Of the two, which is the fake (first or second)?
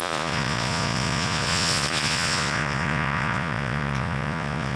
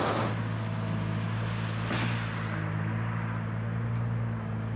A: first